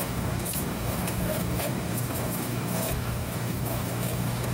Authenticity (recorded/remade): remade